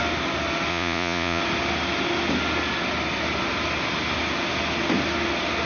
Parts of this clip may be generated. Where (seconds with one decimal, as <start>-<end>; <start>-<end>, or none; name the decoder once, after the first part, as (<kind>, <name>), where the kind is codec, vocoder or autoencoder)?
0.7-1.4 (vocoder, Vocos)